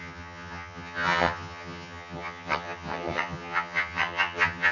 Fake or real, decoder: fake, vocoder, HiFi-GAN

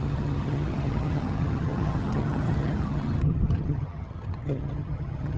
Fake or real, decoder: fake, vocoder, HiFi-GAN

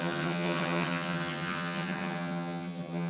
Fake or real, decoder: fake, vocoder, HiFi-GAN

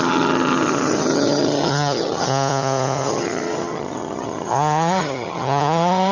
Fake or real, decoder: fake, vocoder, HiFi-GAN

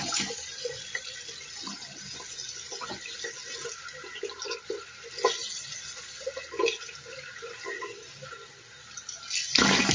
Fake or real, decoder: real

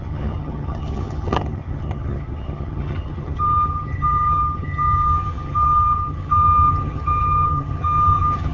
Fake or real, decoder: fake, vocoder, HiFi-GAN